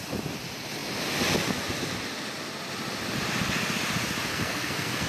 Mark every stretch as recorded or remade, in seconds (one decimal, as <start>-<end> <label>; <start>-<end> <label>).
0.0-4.3 recorded; 4.3-5.1 remade